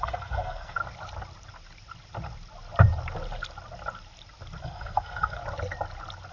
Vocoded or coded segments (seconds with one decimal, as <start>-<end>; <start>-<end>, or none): 0.0-0.8; 4.6-5.4